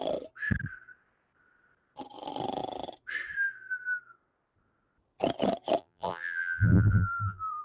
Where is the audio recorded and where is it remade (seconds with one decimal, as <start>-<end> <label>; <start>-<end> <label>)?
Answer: 0.0-5.8 recorded; 5.8-7.6 remade